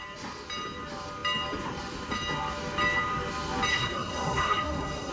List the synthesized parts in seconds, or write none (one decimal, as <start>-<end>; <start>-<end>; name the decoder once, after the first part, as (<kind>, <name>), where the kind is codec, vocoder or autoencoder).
3.7-5.1 (codec, SNAC)